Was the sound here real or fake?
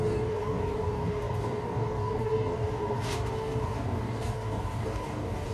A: fake